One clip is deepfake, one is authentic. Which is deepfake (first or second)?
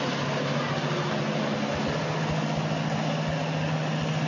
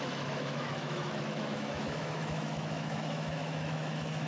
second